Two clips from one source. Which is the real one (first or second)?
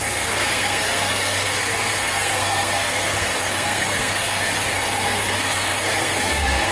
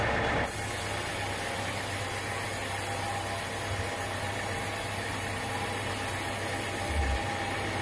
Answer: second